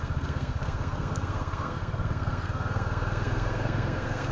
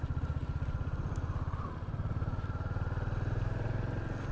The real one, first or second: second